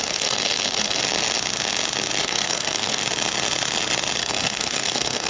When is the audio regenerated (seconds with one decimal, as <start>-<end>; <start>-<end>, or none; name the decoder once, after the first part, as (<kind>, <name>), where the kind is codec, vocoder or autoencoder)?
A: 0.0-1.0 (codec, SNAC); 2.2-3.0; 4.2-5.3